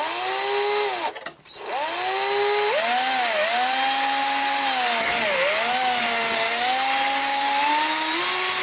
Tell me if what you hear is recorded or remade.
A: recorded